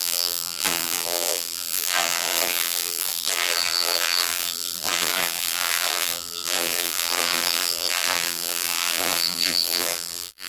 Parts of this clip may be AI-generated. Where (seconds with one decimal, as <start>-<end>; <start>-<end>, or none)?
0.0-10.5